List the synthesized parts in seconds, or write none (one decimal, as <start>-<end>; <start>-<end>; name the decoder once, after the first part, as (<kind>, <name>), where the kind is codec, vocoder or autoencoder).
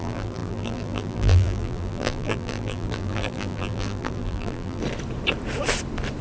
0.0-4.8 (vocoder, BigVGAN v2)